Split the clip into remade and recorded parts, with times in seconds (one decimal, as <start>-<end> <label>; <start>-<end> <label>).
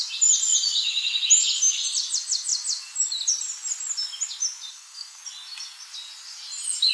0.0-4.7 recorded; 4.7-5.2 remade; 5.2-6.9 recorded